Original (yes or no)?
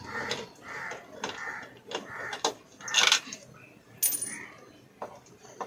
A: yes